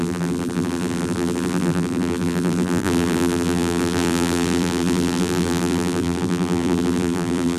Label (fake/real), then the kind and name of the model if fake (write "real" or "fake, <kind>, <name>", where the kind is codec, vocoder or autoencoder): fake, vocoder, BigVGAN v2